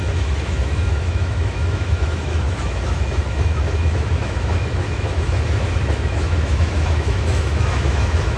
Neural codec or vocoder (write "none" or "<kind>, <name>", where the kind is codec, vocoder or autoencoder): autoencoder, DAC-VAE